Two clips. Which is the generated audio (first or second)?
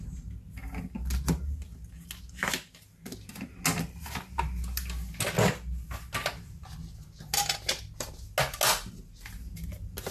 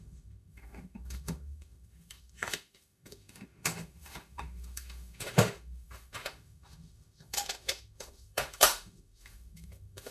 second